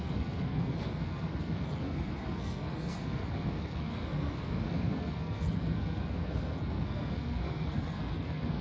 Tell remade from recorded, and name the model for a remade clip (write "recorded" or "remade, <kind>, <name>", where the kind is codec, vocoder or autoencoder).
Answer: remade, codec, SNAC